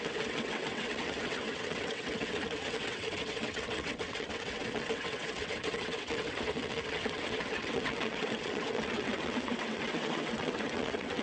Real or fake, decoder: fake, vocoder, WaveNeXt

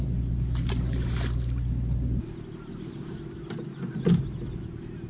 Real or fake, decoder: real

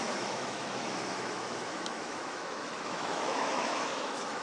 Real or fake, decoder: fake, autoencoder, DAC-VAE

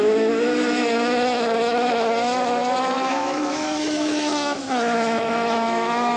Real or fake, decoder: fake, autoencoder, DAC-VAE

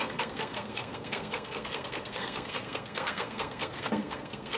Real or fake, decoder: fake, codec, SNAC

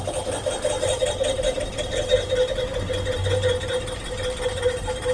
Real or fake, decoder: real